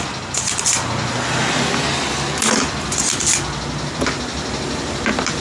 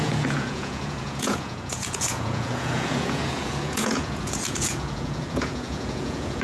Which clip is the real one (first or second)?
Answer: first